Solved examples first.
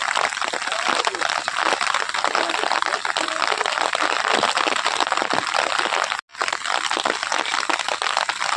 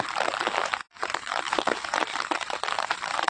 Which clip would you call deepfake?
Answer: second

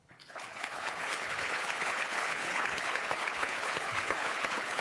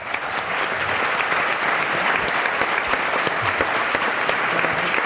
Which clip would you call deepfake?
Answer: first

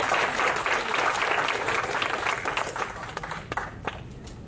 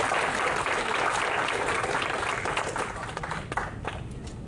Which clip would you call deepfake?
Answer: second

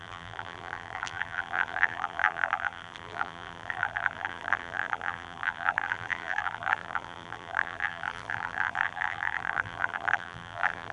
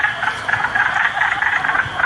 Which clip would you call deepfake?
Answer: first